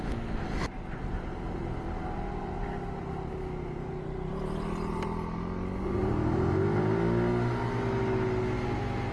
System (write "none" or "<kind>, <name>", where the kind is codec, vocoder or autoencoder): none